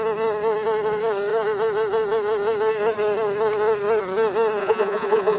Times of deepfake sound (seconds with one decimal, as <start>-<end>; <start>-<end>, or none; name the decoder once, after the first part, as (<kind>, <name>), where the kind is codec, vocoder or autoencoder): 4.6-5.4 (vocoder, Vocos)